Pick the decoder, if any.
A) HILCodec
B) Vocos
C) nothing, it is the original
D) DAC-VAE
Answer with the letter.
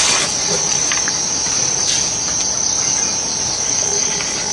C